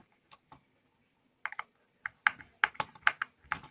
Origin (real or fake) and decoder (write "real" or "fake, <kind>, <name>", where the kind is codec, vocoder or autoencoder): real